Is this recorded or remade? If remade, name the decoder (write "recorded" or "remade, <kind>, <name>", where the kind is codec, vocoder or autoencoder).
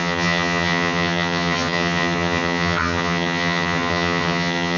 remade, vocoder, HiFi-GAN